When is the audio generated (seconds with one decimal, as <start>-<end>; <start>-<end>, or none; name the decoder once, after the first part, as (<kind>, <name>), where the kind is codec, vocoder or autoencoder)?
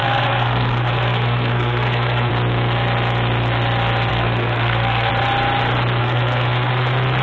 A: 0.0-2.3 (codec, SNAC); 4.1-5.1; 6.0-6.7